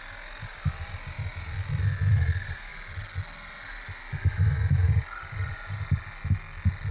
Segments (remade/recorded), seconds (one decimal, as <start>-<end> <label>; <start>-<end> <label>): 0.0-6.9 recorded